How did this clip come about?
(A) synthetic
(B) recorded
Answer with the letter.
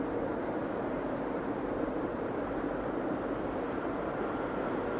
B